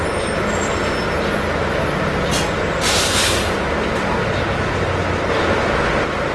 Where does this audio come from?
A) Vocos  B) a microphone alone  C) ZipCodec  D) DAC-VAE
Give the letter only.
B